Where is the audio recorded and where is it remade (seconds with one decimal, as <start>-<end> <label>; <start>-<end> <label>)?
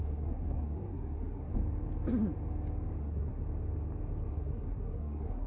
0.0-1.5 remade; 1.5-3.0 recorded; 3.0-3.4 remade; 3.4-4.3 recorded; 4.3-5.5 remade